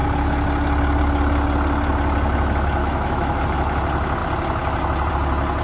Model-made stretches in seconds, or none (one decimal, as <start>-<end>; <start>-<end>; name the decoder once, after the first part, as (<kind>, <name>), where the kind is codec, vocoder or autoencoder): 2.8-3.4 (autoencoder, DAC-VAE)